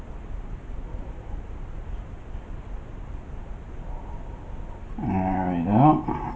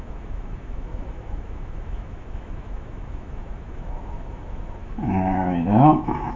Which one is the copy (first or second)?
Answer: second